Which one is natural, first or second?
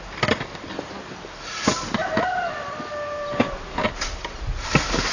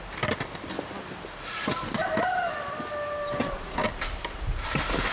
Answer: first